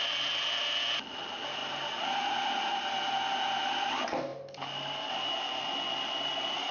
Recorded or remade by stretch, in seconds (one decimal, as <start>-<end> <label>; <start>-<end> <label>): 0.0-6.7 recorded